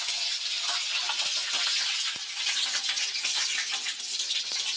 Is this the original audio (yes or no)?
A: yes